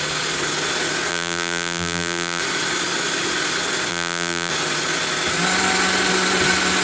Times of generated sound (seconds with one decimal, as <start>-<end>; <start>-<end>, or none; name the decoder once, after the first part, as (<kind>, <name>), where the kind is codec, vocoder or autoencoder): 1.1-2.4 (vocoder, BigVGAN v2); 3.9-4.5